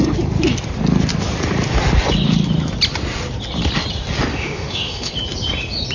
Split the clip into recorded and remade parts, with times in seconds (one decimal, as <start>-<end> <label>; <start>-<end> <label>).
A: 0.0-4.3 recorded; 4.3-5.1 remade; 5.1-5.9 recorded